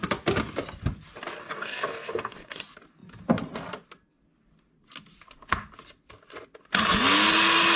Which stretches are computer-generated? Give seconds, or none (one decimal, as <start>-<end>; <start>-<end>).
1.4-2.6